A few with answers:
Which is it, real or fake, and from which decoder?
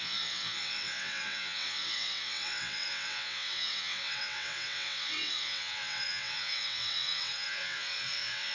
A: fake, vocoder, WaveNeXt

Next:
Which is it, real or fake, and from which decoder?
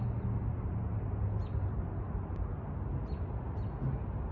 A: real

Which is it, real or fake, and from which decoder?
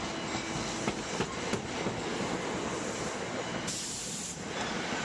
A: real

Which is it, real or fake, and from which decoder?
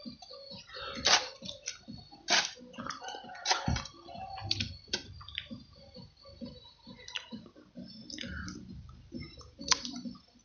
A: real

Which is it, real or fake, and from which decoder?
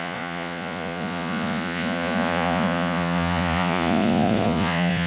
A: fake, vocoder, Vocos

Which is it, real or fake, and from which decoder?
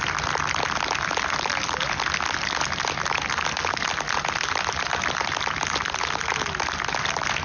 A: real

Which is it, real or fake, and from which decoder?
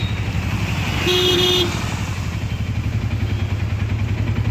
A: real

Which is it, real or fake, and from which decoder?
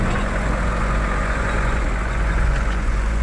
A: fake, vocoder, Vocos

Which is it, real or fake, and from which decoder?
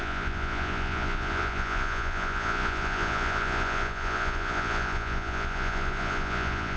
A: fake, vocoder, Vocos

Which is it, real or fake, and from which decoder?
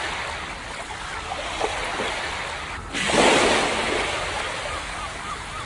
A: real